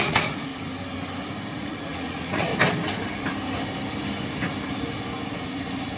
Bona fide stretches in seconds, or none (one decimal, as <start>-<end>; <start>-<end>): 0.5-1.5; 2.5-6.0